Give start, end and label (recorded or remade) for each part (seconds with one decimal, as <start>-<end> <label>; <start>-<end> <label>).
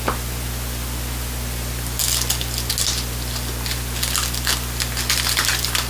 0.0-5.9 recorded